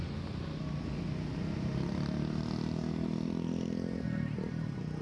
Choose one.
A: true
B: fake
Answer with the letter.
A